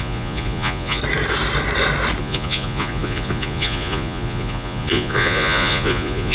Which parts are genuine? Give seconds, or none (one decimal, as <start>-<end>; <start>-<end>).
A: 1.0-2.2